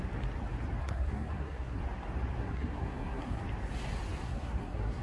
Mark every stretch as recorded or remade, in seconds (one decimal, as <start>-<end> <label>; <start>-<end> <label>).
0.0-0.8 recorded; 0.8-1.8 remade; 1.8-2.4 recorded; 2.4-3.4 remade; 3.4-4.2 recorded; 4.2-5.0 remade